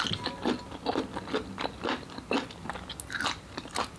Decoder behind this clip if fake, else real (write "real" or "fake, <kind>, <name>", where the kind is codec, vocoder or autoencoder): real